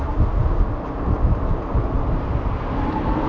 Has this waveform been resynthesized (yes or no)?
no